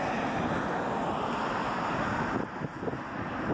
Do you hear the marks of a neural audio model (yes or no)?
no